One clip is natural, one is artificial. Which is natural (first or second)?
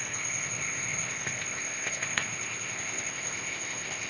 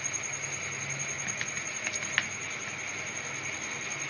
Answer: second